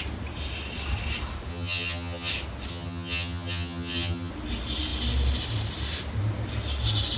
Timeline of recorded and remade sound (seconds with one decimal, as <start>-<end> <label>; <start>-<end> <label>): 0.0-1.5 recorded; 1.5-2.3 remade; 2.3-2.7 recorded; 2.7-4.3 remade; 4.3-7.2 recorded